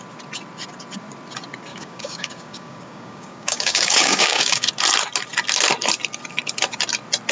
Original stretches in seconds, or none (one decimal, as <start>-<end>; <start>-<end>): 0.0-1.7; 4.7-7.3